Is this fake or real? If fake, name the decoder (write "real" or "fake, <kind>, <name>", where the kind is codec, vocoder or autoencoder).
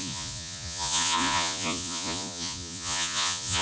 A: fake, vocoder, Vocos